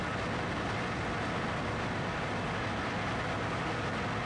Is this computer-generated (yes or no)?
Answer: no